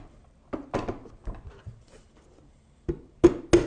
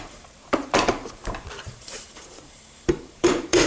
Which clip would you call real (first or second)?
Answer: first